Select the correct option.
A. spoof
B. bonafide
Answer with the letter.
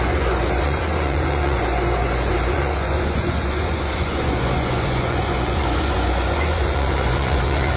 A